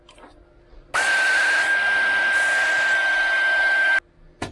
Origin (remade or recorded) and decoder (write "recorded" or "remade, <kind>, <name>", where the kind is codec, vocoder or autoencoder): recorded